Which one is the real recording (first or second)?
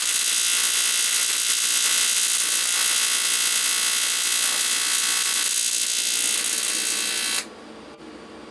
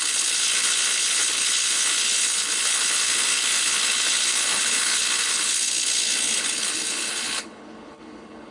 first